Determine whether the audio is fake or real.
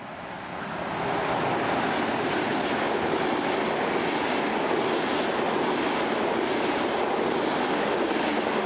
real